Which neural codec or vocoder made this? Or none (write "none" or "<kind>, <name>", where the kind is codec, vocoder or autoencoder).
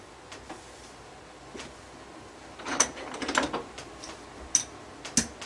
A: none